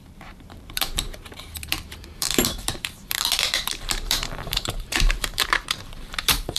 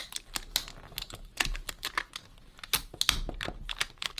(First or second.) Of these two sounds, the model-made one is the first